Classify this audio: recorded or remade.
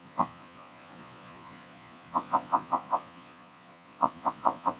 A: remade